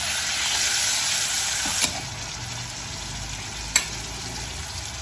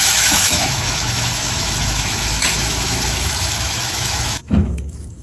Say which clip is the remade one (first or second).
second